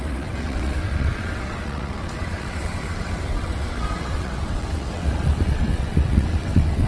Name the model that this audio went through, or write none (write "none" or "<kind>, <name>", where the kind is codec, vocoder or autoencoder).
vocoder, WaveNeXt